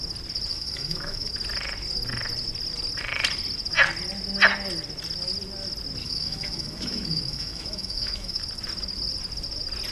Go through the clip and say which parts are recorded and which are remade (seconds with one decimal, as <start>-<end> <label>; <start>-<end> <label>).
0.0-0.5 recorded; 0.5-1.3 remade; 1.3-6.0 recorded; 6.0-8.4 remade; 8.4-9.9 recorded